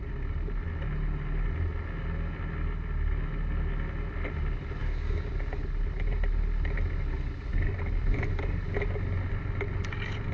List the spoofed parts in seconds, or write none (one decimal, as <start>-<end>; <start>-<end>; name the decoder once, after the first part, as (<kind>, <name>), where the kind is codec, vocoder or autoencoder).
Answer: 4.8-5.3 (codec, DAC)

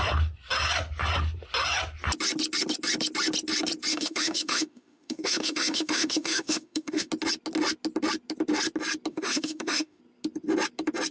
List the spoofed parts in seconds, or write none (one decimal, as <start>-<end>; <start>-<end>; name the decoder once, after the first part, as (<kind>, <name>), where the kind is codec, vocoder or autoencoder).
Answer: 3.9-7.1 (autoencoder, DAC-VAE); 9.1-10.0

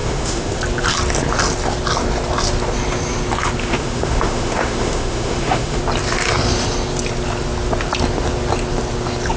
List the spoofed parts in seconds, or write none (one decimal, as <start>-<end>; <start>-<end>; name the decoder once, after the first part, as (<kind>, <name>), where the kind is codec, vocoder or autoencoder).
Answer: 0.0-0.6 (autoencoder, DAC-VAE); 3.6-5.8